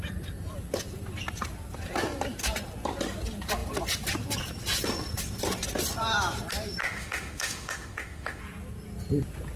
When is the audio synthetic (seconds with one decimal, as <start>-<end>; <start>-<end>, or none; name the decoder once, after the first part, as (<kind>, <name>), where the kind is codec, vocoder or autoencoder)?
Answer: 6.8-8.4 (autoencoder, DAC-VAE)